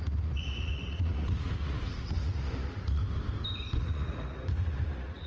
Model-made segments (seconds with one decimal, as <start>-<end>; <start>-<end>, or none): 0.0-3.0; 3.8-5.3

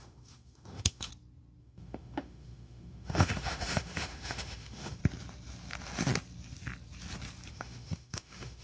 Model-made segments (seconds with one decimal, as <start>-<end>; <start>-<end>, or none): 0.0-1.1; 1.6-5.0; 7.5-8.6

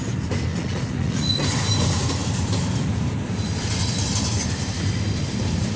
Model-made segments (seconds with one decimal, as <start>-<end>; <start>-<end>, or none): 0.5-1.3